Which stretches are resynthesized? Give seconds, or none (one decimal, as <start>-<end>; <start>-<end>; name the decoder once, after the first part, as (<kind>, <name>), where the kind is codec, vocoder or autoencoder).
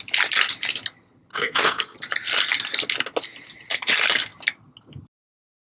1.3-1.8 (codec, SNAC)